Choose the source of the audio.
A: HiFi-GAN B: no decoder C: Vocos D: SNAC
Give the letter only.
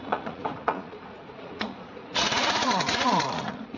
C